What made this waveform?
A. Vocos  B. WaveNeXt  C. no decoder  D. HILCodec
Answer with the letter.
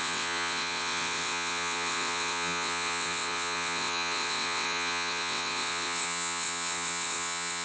B